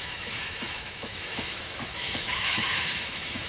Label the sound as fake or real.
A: fake